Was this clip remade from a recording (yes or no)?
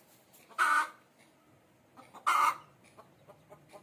no